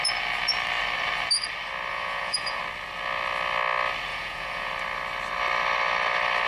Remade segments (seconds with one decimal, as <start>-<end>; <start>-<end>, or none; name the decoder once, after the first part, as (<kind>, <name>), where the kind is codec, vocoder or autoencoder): 1.9-2.6 (vocoder, Vocos); 4.1-4.7